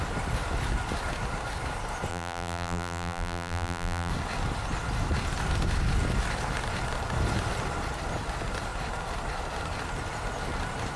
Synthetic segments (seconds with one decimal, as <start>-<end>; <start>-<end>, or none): 2.1-4.1